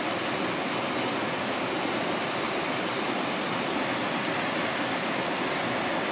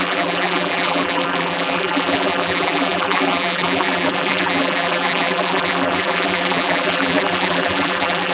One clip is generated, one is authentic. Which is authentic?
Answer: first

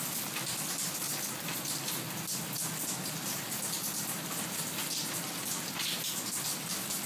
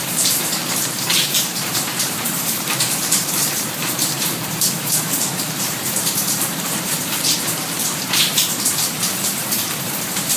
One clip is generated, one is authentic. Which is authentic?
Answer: first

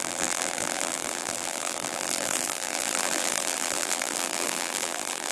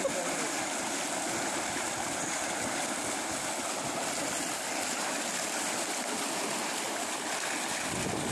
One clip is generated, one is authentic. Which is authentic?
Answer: second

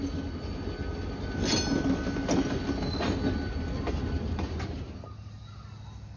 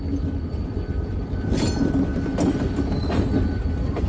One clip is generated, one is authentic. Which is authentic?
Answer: first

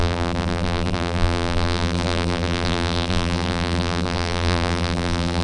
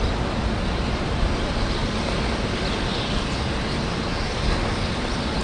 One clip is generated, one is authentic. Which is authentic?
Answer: second